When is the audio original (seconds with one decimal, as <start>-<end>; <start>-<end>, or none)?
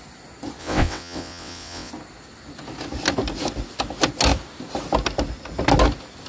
0.0-0.6; 1.9-6.3